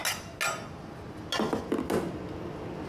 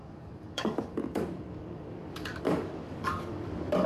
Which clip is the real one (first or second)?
first